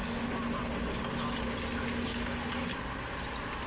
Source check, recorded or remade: recorded